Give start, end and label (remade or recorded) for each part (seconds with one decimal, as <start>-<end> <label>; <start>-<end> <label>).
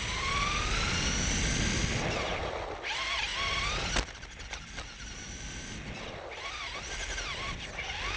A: 0.0-8.2 recorded